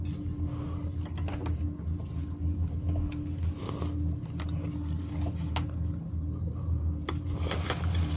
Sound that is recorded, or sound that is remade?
recorded